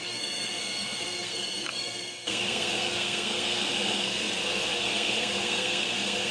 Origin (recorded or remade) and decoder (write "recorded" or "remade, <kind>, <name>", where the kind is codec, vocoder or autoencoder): remade, codec, SNAC